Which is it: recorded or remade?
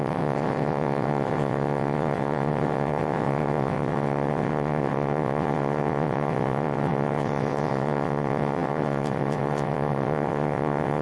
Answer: remade